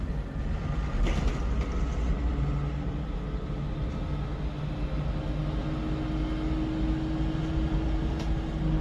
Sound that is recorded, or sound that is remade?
recorded